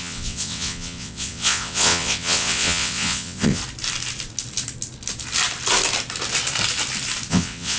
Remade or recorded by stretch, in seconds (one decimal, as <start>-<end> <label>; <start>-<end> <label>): 0.0-3.6 remade; 3.6-7.3 recorded; 7.3-7.8 remade